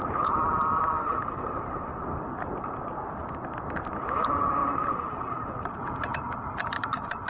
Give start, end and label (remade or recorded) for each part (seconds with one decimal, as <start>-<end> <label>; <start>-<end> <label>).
0.0-1.9 remade; 1.9-4.0 recorded; 4.0-7.3 remade